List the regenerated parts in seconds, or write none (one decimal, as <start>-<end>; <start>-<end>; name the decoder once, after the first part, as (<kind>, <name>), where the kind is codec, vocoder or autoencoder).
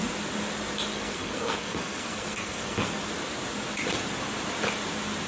0.9-3.0 (codec, SNAC)